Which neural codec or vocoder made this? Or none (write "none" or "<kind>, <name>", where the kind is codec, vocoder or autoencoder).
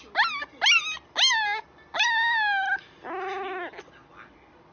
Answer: none